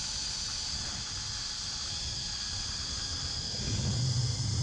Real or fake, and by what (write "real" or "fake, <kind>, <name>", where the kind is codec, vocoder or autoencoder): real